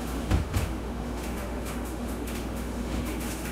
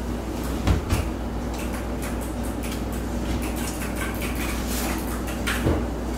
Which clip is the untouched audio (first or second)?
second